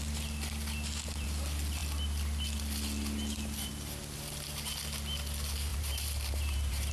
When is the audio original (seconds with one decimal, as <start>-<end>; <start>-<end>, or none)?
0.0-5.7